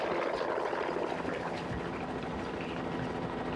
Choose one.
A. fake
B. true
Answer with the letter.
B